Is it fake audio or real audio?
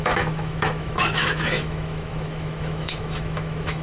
fake